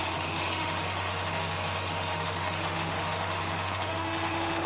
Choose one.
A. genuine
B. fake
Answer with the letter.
B